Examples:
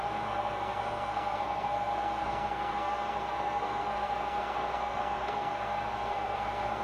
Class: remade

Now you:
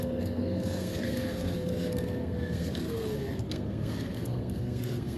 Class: remade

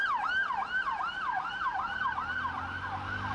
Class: recorded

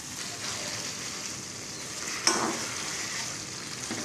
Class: recorded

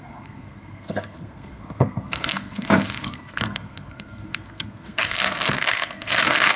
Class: remade